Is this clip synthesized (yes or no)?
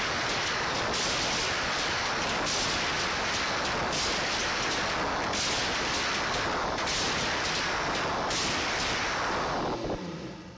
no